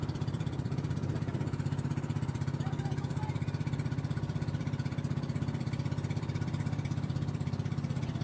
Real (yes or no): no